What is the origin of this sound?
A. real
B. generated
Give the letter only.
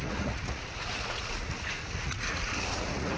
B